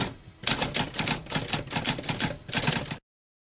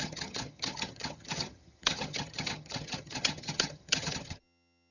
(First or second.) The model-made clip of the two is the second